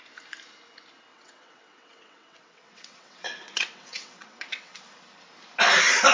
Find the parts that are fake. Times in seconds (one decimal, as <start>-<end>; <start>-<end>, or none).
1.1-4.8